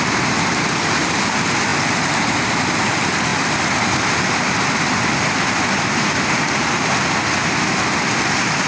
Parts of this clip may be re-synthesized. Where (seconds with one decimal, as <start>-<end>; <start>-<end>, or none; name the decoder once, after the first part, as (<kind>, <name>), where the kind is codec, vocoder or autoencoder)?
none